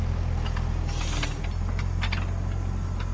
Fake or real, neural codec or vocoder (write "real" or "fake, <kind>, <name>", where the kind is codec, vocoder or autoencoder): real